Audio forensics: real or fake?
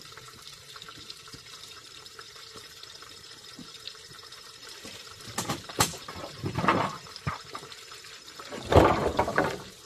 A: fake